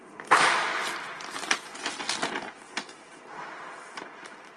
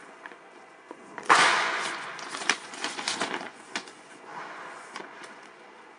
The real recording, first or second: first